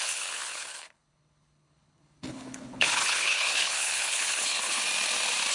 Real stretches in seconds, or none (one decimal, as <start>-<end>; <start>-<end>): 4.8-5.5